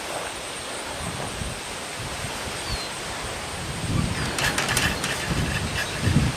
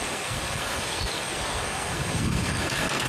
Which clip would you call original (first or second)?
first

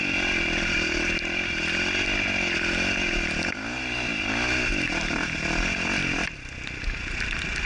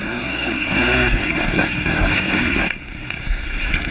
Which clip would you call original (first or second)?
first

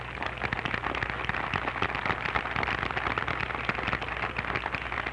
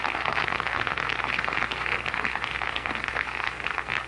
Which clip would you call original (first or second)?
first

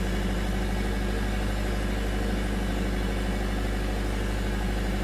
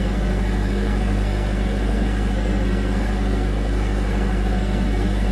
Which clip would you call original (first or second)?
first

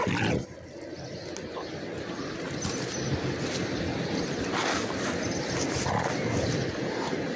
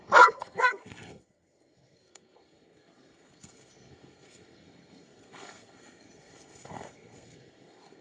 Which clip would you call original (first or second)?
first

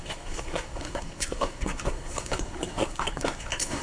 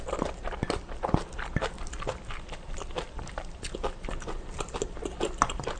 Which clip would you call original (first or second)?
second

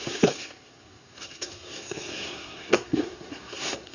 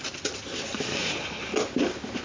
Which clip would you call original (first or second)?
second